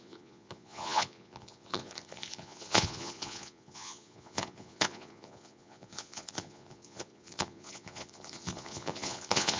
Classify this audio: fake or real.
fake